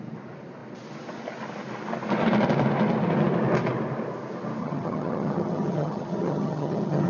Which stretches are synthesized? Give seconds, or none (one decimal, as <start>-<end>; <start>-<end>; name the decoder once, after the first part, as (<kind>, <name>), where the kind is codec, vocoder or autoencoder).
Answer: 4.6-7.1 (vocoder, HiFi-GAN)